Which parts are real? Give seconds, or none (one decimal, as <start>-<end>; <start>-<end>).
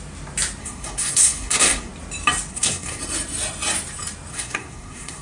0.0-0.6; 1.9-2.5; 3.0-4.3